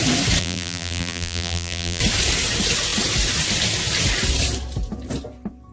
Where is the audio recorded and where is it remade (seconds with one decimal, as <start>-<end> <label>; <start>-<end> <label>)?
0.0-0.4 recorded; 0.4-2.0 remade; 2.0-5.7 recorded

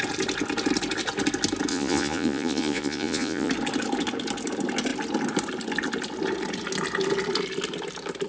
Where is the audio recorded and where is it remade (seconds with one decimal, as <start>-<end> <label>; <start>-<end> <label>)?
0.0-1.7 recorded; 1.7-3.5 remade; 3.5-8.3 recorded

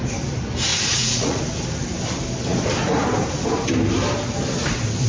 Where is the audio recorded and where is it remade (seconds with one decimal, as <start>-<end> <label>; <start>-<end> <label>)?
0.0-0.7 recorded; 0.7-1.4 remade; 1.4-5.1 recorded